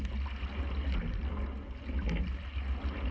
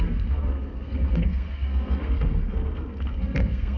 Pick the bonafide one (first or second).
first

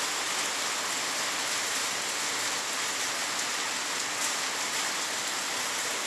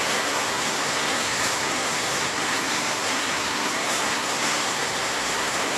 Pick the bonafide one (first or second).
first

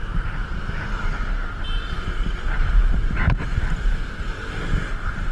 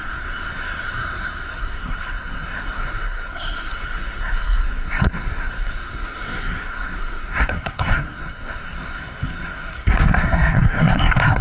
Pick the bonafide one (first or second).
first